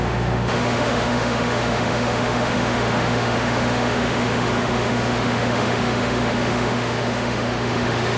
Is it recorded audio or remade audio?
remade